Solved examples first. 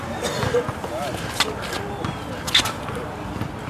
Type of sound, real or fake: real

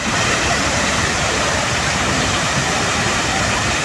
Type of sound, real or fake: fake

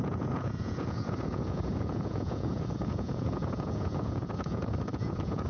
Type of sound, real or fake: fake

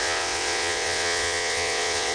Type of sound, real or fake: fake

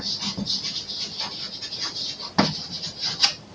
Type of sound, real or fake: real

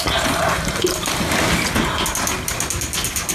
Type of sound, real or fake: real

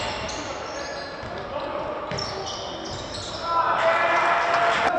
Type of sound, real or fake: real